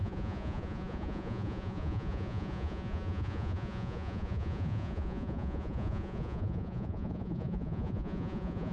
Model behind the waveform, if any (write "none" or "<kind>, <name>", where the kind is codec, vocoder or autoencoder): vocoder, Vocos